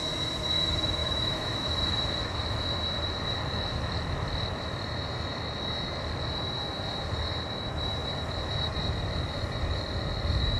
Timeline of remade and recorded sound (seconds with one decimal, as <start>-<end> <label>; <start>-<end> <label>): 0.0-1.0 recorded; 1.0-1.7 remade; 1.7-10.6 recorded